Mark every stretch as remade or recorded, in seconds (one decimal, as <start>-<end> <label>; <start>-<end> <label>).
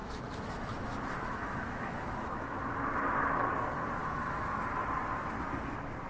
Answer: 0.0-3.5 remade; 3.5-4.0 recorded; 4.0-4.6 remade; 4.6-6.1 recorded